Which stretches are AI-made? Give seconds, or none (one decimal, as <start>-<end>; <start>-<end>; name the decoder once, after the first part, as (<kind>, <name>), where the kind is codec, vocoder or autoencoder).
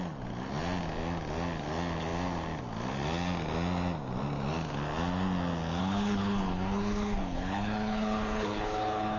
5.8-9.2 (codec, HILCodec)